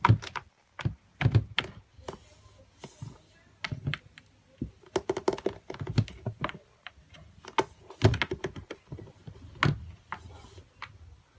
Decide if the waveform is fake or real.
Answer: real